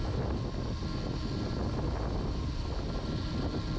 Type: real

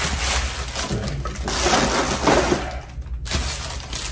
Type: real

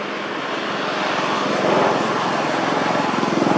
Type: real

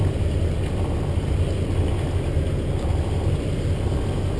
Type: real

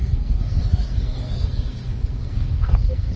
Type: fake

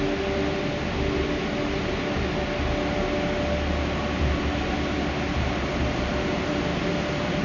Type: real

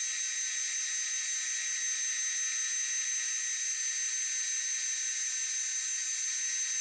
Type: real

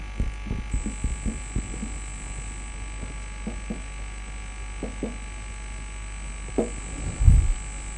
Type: real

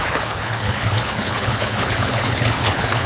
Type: fake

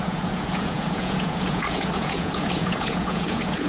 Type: fake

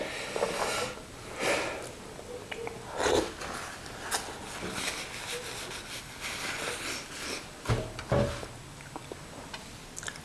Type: real